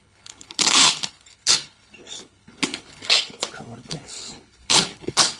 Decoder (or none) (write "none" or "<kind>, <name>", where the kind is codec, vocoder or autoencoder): codec, HILCodec